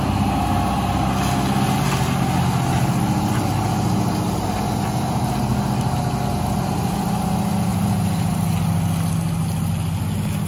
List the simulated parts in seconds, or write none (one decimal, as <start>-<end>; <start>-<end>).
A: none